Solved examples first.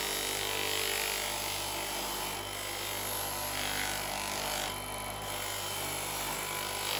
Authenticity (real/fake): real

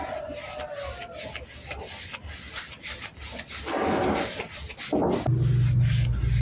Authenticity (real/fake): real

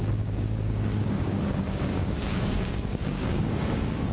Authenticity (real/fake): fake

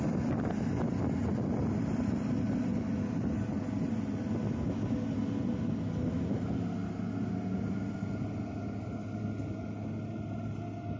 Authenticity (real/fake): real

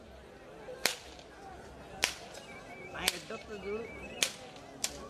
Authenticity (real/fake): real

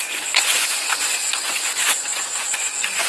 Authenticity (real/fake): fake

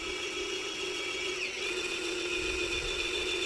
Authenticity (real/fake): fake